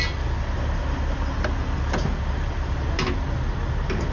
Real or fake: real